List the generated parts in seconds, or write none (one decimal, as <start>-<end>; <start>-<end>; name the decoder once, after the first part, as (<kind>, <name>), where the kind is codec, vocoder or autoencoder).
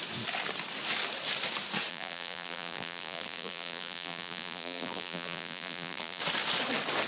1.9-6.2 (vocoder, BigVGAN v2)